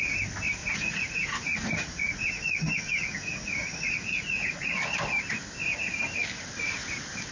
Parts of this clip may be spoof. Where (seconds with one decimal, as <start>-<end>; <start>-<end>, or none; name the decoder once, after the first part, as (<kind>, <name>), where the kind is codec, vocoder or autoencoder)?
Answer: 0.6-4.8 (vocoder, Vocos)